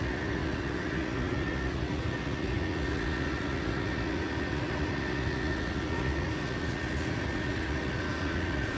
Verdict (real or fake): fake